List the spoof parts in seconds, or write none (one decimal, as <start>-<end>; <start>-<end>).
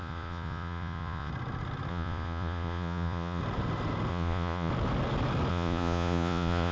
0.0-1.3; 1.9-3.4; 4.1-4.7; 5.5-6.7